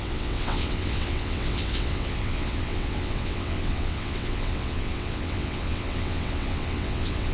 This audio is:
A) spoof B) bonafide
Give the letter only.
A